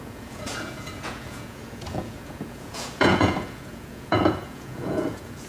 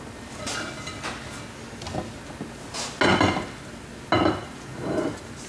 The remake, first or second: first